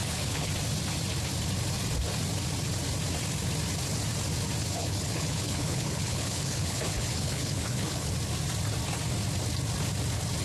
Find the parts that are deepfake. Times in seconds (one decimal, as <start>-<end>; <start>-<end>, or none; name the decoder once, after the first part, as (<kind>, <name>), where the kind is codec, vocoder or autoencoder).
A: 0.0-0.5 (codec, HILCodec); 4.8-8.1